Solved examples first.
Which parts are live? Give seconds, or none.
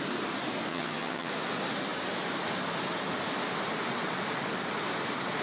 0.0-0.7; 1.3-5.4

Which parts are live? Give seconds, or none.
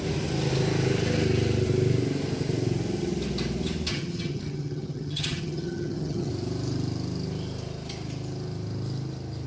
0.0-3.9; 6.3-9.5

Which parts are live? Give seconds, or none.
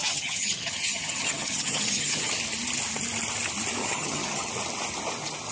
2.3-3.8; 4.5-5.5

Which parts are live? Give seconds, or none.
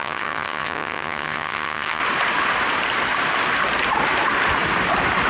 2.0-5.3